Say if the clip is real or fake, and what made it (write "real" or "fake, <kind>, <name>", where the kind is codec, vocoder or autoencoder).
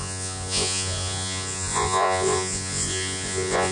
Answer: fake, vocoder, Vocos